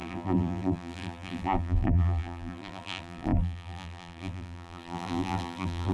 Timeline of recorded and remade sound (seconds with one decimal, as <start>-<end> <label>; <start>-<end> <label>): 0.0-5.9 remade